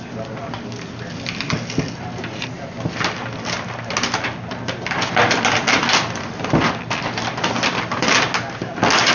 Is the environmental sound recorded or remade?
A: recorded